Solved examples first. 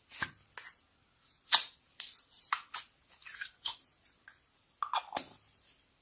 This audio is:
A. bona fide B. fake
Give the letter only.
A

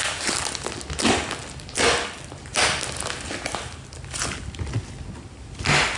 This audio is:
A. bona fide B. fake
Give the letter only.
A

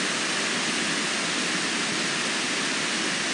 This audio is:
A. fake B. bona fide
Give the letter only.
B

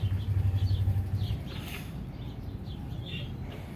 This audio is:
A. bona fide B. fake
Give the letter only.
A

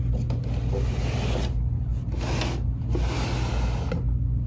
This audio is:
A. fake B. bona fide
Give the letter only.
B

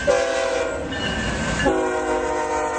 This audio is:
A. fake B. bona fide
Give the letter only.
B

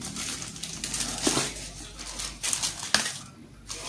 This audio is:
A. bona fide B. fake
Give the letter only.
A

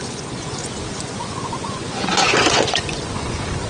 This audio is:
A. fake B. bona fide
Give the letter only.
A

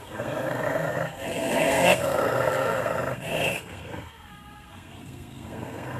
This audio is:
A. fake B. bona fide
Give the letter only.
A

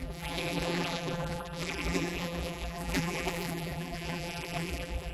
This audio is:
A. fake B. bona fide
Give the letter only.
A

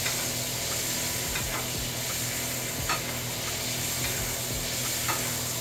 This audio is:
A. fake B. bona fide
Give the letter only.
B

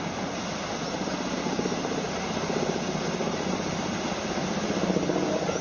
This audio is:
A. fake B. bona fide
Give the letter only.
B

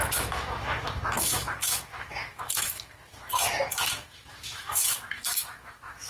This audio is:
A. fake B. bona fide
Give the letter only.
A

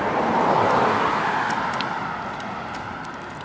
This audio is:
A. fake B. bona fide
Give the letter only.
B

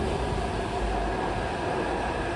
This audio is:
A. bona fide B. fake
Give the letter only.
A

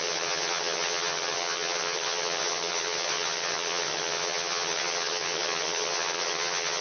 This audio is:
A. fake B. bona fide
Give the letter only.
A